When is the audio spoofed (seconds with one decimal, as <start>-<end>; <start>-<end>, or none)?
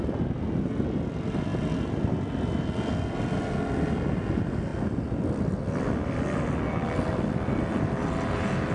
none